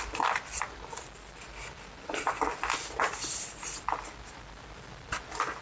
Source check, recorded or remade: recorded